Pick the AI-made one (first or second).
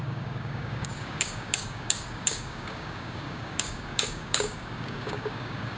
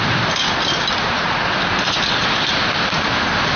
first